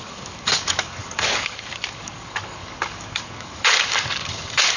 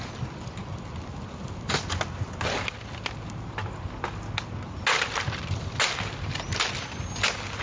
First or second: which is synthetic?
first